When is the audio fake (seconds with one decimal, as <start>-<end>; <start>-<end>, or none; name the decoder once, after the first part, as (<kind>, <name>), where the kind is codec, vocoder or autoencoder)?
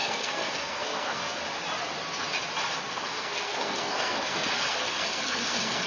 0.0-1.4 (codec, SNAC); 2.9-5.9